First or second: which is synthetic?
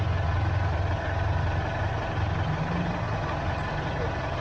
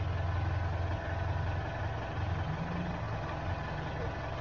first